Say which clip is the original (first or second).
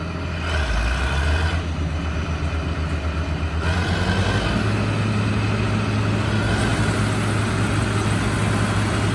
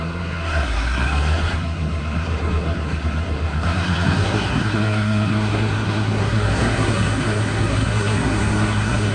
first